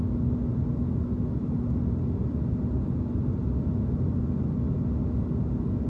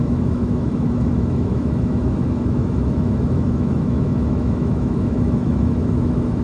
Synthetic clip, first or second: second